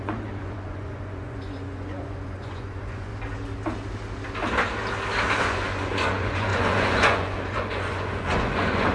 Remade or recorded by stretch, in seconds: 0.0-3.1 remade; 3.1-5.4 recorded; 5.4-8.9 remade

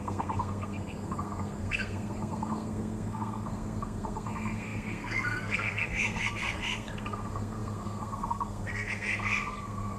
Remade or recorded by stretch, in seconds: 0.0-10.0 remade

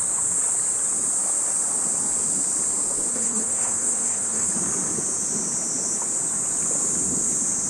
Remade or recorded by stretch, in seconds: 0.0-3.1 recorded; 3.1-4.5 remade; 4.5-7.7 recorded